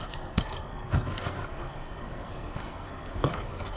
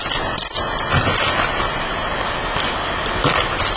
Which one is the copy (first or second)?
first